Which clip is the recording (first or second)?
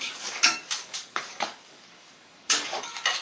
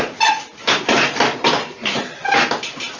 second